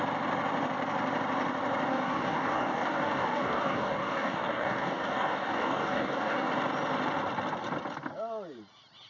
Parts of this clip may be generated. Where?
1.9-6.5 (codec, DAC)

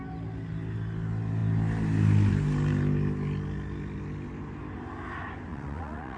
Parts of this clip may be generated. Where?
5.5-6.2 (vocoder, WaveNeXt)

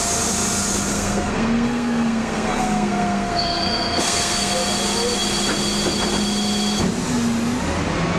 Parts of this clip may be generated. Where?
0.9-4.5 (codec, SNAC)

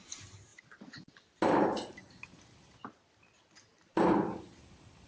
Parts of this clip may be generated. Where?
0.0-0.5 (vocoder, BigVGAN v2); 1.5-2.0; 4.6-5.1